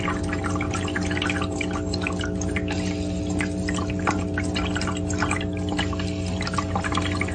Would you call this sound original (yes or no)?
yes